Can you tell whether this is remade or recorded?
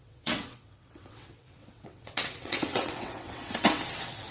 remade